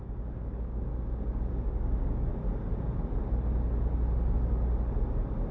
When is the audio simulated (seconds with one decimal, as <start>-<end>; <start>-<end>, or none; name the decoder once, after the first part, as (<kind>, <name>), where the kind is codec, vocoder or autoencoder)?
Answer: 0.0-0.9 (codec, DAC); 1.5-2.3